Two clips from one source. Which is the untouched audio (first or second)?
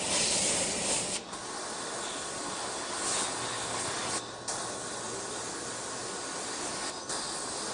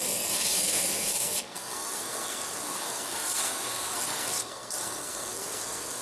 first